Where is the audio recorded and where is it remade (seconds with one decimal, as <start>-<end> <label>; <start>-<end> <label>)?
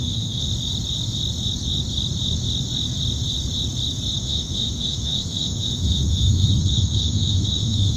0.0-0.5 remade; 0.5-4.2 recorded; 4.2-8.0 remade